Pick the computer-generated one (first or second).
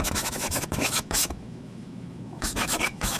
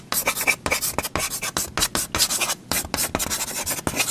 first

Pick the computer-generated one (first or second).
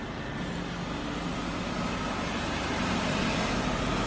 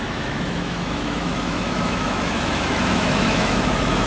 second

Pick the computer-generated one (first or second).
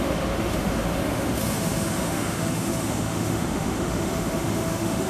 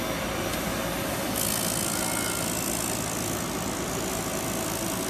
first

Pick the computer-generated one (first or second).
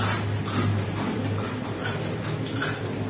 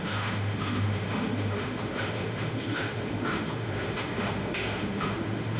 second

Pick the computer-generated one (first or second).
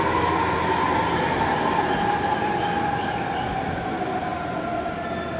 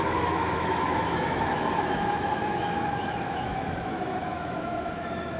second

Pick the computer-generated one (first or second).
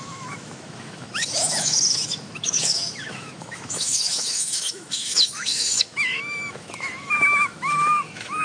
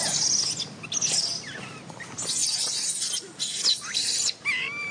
first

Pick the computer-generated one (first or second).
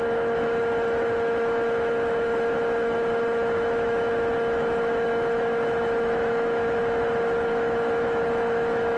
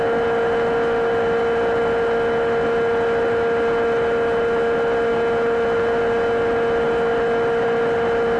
first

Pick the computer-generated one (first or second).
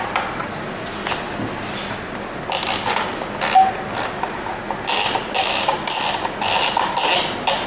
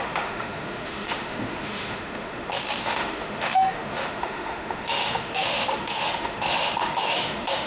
second